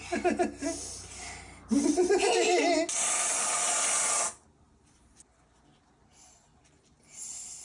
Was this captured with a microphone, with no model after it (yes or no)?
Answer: yes